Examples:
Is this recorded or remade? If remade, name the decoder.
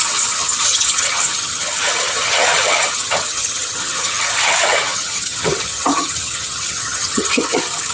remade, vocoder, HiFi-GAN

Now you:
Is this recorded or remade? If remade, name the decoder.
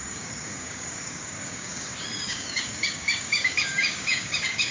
remade, codec, DAC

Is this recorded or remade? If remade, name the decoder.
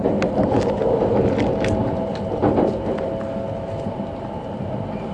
recorded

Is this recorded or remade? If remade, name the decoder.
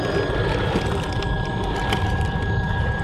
recorded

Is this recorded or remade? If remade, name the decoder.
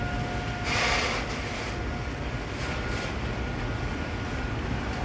recorded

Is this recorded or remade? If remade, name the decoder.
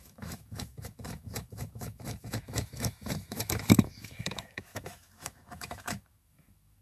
remade, autoencoder, DAC-VAE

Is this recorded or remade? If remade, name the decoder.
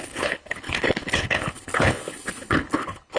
remade, codec, HILCodec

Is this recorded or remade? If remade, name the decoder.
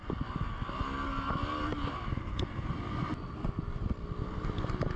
recorded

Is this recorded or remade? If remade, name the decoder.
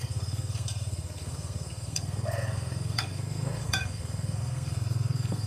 remade, codec, SNAC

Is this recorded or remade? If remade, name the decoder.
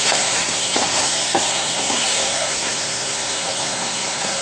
remade, codec, SNAC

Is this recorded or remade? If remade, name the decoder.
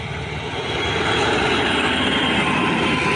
recorded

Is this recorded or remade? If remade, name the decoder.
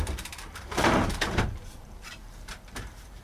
remade, vocoder, BigVGAN v2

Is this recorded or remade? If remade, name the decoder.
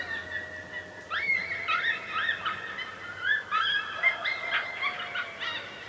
recorded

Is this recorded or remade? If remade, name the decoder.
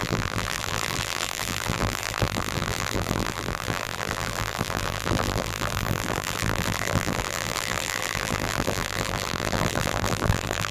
remade, vocoder, BigVGAN v2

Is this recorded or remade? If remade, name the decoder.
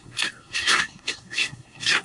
remade, codec, SNAC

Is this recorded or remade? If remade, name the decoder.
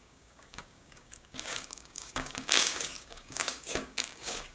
remade, codec, DAC